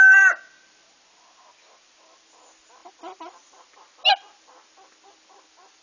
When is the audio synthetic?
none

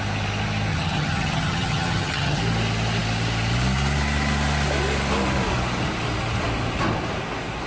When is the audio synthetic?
0.7-2.4

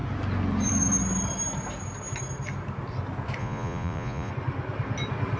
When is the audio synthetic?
3.4-4.3

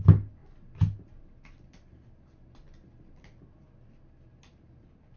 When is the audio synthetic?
none

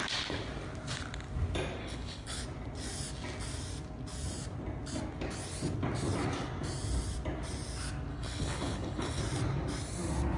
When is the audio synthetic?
1.8-2.4; 8.1-9.2